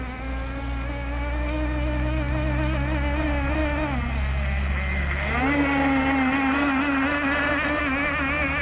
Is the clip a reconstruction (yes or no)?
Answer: no